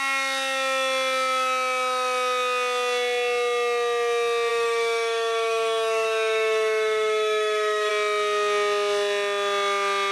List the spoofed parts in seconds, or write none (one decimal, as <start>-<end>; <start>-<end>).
4.5-7.9